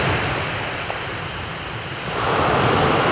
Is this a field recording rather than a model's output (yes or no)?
yes